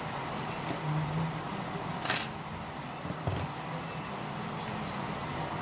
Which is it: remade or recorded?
recorded